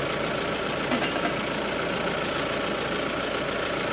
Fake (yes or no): no